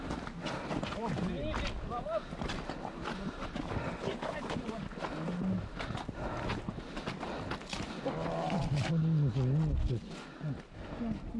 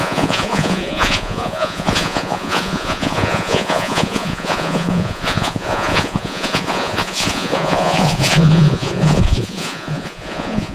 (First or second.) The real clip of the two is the first